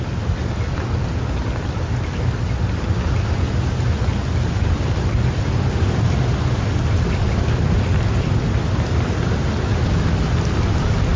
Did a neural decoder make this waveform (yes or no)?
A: no